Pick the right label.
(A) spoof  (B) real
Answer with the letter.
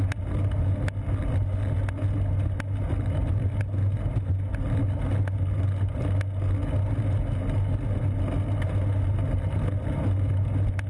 B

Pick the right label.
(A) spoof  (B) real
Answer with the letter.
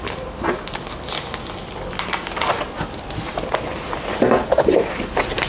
B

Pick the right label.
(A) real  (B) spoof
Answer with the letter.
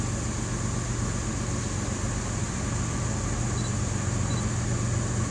A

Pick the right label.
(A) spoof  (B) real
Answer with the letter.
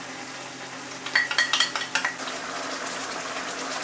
B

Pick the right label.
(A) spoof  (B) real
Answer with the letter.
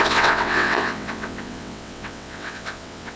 A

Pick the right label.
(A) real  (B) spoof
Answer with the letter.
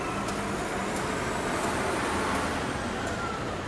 A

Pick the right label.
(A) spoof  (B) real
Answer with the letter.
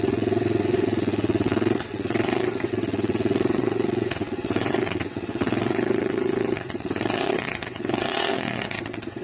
A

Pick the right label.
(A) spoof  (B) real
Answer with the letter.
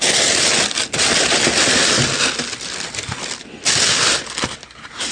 B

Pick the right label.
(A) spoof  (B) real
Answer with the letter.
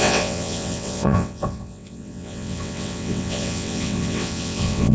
A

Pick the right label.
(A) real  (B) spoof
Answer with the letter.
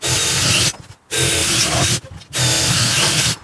A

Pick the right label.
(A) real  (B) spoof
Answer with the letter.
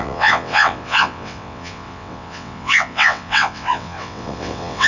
B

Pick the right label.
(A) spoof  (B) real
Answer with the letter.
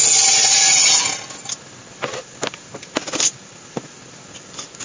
B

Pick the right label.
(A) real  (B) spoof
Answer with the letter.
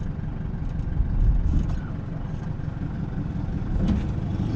A